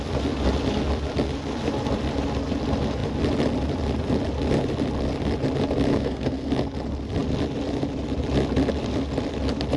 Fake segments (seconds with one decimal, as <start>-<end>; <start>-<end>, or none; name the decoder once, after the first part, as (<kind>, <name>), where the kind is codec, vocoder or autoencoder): 5.9-6.5 (codec, SNAC)